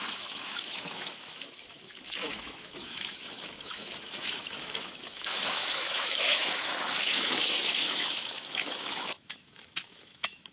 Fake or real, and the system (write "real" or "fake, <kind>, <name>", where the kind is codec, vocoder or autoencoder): fake, autoencoder, DAC-VAE